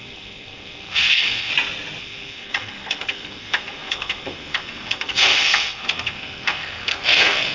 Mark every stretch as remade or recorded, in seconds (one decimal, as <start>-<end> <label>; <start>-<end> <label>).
0.0-1.5 remade; 1.5-2.0 recorded; 2.0-7.5 remade